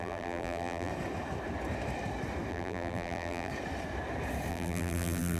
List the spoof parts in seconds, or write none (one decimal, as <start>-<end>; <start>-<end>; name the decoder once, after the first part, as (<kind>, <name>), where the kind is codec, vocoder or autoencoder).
0.0-0.9 (vocoder, BigVGAN v2); 2.5-3.5; 4.5-5.4